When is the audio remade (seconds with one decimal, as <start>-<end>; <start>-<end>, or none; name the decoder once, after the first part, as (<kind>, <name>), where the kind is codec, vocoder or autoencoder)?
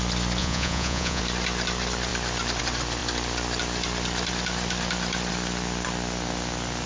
0.4-1.2 (vocoder, Vocos)